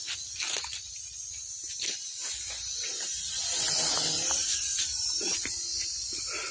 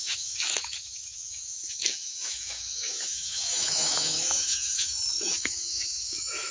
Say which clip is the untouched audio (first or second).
first